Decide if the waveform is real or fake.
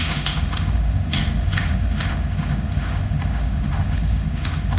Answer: fake